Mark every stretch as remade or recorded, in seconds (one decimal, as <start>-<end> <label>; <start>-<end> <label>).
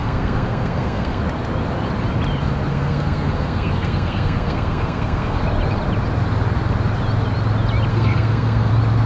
0.0-1.2 remade; 1.2-2.7 recorded; 2.7-5.4 remade; 5.4-7.9 recorded; 7.9-8.7 remade; 8.7-9.1 recorded